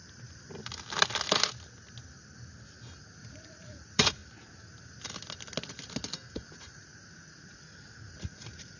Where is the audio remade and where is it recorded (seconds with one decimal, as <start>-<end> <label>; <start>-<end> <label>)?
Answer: 0.0-3.0 recorded; 3.0-4.2 remade; 4.2-6.5 recorded; 6.5-8.8 remade